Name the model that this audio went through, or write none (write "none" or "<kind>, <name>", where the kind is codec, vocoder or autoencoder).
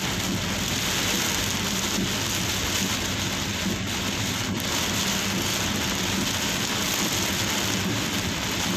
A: none